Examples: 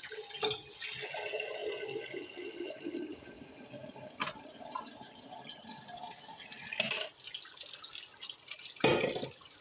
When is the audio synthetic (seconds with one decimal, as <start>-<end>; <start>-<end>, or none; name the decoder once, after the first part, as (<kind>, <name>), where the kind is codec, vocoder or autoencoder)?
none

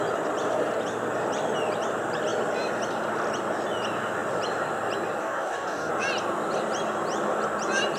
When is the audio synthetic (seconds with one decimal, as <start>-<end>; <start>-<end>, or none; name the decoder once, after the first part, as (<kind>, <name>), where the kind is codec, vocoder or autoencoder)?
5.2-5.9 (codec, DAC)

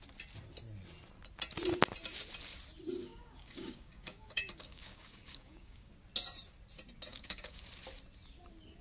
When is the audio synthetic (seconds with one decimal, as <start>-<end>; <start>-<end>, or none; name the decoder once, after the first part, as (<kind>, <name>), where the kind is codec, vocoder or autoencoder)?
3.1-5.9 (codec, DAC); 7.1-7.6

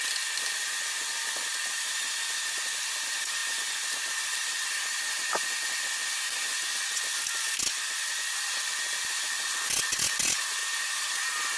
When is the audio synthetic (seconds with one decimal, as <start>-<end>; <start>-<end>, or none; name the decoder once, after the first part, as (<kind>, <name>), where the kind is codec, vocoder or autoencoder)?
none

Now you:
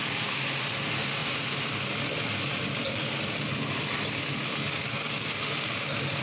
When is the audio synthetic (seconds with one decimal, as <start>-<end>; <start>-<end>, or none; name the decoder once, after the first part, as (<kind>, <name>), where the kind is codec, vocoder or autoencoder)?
4.7-5.4 (codec, DAC)

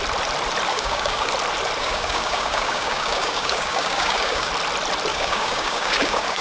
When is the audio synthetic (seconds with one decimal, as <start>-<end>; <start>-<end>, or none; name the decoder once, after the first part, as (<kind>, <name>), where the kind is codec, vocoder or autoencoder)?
0.7-1.3 (codec, DAC); 1.8-4.5; 5.1-6.4

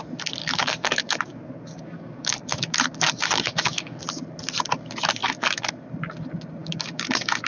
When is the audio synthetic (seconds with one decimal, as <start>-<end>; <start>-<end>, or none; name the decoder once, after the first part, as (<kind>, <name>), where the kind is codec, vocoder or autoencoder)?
0.4-4.0 (codec, DAC); 5.2-5.7; 6.6-7.5

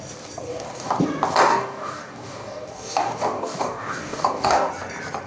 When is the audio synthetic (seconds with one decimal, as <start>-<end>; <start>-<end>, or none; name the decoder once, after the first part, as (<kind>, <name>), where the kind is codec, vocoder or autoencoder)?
0.5-1.0 (codec, DAC); 1.5-4.7